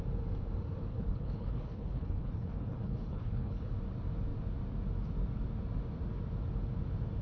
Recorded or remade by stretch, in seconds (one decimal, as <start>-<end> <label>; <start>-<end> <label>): 0.0-0.9 recorded; 0.9-3.7 remade; 3.7-7.2 recorded